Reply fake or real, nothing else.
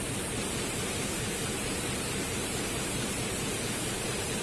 fake